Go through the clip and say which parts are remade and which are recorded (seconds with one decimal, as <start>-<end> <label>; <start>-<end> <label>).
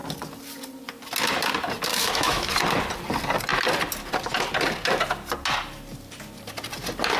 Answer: 0.0-1.9 recorded; 1.9-2.5 remade; 2.5-7.2 recorded